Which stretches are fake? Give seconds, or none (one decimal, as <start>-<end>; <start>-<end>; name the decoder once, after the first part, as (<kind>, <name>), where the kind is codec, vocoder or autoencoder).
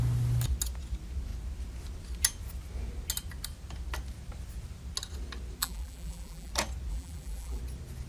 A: 5.6-6.5 (vocoder, BigVGAN v2); 6.9-7.6